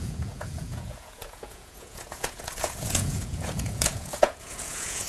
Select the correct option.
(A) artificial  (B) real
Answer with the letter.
A